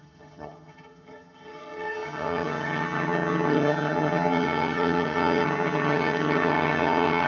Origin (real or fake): fake